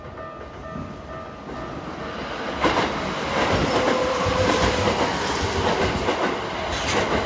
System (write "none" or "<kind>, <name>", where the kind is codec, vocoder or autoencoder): none